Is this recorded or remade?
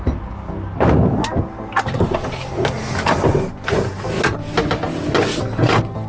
recorded